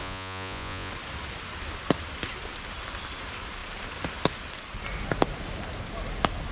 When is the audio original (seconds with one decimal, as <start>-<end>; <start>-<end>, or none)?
0.9-6.5